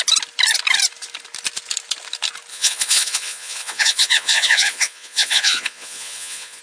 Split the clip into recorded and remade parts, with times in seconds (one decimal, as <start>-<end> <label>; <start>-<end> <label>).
0.0-2.5 recorded; 2.5-6.6 remade